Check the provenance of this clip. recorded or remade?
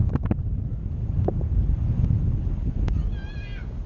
recorded